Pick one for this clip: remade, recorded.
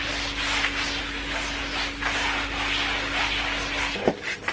recorded